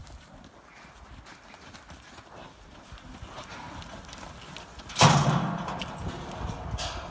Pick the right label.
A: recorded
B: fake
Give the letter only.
A